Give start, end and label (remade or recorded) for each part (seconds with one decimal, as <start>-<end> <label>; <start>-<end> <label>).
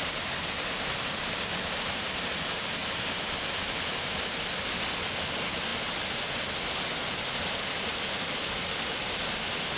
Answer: 0.0-9.8 recorded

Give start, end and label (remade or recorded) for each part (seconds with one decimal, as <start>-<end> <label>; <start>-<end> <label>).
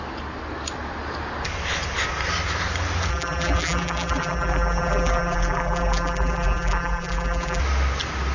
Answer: 0.0-3.1 recorded; 3.1-7.6 remade; 7.6-8.3 recorded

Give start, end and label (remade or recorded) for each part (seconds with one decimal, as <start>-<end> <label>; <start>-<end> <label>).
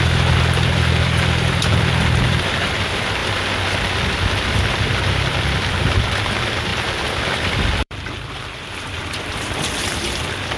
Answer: 0.0-3.2 remade; 3.2-3.9 recorded; 3.9-10.6 remade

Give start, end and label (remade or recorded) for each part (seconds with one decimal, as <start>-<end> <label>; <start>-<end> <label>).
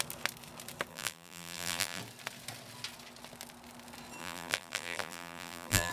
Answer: 0.0-0.9 recorded; 0.9-2.0 remade; 2.0-4.2 recorded; 4.2-5.9 remade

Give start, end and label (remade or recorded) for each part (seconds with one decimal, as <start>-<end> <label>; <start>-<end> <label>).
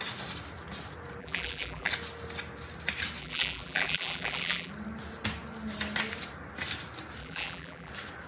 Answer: 0.0-1.2 recorded; 1.2-1.9 remade; 1.9-3.2 recorded; 3.2-4.7 remade; 4.7-7.2 recorded; 7.2-7.9 remade; 7.9-8.3 recorded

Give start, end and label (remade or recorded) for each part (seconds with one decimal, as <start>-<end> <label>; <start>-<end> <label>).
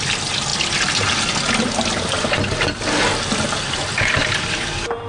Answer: 0.0-5.1 recorded